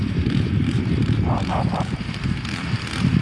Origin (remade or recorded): remade